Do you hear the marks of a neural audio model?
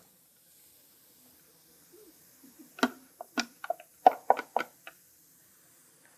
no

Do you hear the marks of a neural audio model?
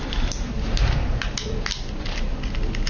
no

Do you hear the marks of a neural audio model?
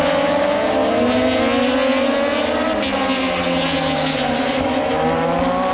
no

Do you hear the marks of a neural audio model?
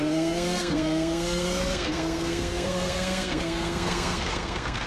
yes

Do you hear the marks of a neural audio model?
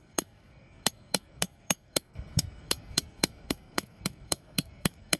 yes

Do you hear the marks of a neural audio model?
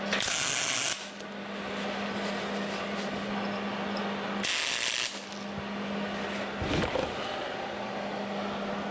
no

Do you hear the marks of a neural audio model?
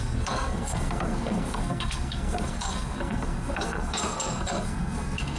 yes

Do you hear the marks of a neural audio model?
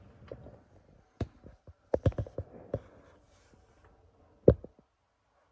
no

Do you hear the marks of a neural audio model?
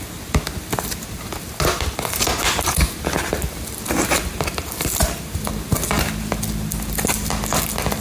no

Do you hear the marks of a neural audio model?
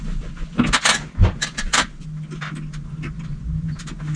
no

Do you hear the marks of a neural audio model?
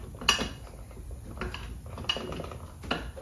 no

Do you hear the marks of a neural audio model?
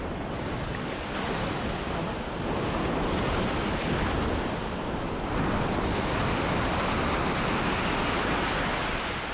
no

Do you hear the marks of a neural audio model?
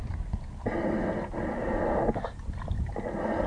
no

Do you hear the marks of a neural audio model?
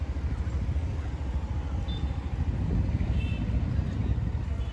no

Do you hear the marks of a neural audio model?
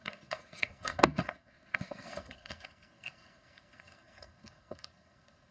yes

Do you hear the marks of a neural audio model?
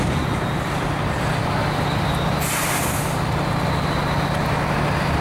no